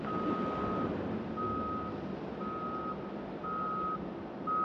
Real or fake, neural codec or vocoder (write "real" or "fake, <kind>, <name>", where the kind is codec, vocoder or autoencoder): real